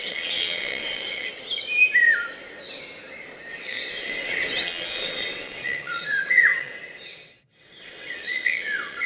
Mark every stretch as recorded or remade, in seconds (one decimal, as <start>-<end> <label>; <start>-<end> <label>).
0.0-1.3 remade; 1.3-3.5 recorded; 3.5-9.1 remade

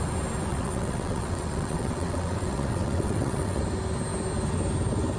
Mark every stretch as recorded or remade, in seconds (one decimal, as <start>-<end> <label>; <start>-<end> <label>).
0.0-0.5 recorded; 0.5-3.6 remade; 3.6-5.2 recorded

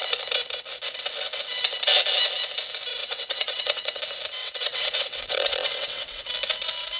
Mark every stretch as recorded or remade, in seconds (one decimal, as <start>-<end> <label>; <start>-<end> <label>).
0.0-3.0 recorded; 3.0-4.0 remade; 4.0-4.4 recorded; 4.4-6.3 remade; 6.3-7.0 recorded

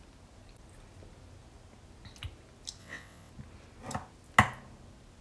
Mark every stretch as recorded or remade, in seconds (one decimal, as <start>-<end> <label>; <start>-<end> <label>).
0.0-2.8 recorded; 2.8-3.3 remade; 3.3-5.2 recorded

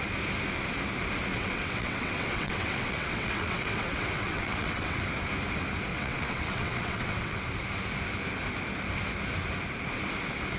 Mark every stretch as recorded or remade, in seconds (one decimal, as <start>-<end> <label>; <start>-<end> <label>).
0.0-1.3 recorded; 1.3-5.0 remade; 5.0-5.9 recorded; 5.9-7.4 remade; 7.4-10.6 recorded

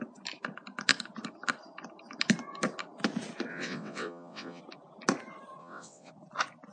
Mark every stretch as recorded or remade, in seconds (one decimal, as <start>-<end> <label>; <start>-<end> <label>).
0.0-3.5 recorded; 3.5-4.6 remade; 4.6-5.6 recorded; 5.6-6.1 remade; 6.1-6.7 recorded

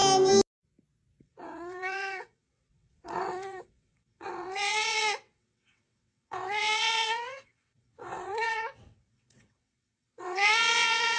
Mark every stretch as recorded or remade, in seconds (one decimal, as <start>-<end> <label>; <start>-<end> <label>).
0.0-1.2 recorded; 1.2-11.2 remade

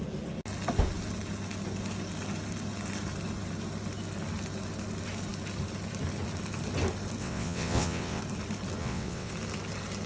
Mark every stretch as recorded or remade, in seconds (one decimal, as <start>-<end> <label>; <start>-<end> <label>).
0.0-7.2 recorded; 7.2-8.2 remade; 8.2-8.8 recorded; 8.8-9.3 remade; 9.3-10.1 recorded